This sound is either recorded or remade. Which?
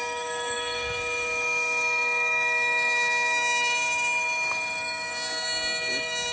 remade